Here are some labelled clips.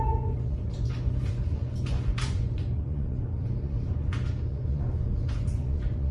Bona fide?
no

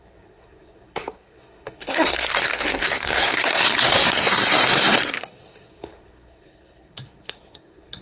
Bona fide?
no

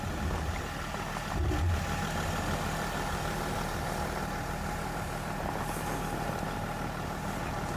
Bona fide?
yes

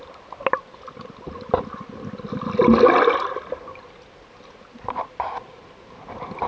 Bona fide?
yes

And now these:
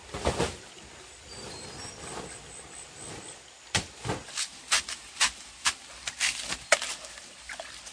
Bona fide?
yes